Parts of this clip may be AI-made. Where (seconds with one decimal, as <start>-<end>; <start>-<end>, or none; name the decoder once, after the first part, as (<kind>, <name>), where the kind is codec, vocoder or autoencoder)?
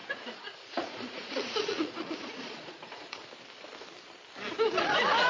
0.0-3.2 (vocoder, Vocos)